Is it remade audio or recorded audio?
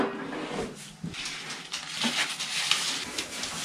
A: recorded